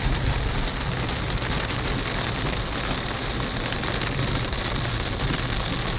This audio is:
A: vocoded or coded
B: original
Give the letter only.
B